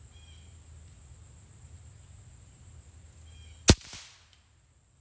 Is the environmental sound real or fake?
real